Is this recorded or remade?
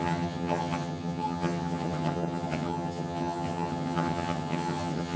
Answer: remade